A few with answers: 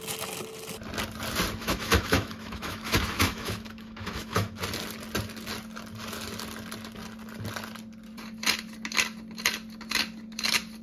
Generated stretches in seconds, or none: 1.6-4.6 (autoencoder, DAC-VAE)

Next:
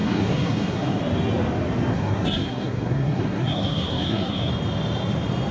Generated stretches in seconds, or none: 0.0-1.0 (codec, SNAC); 1.9-4.5

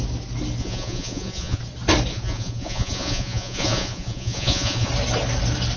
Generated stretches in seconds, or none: 0.6-1.6 (vocoder, Vocos); 2.1-4.9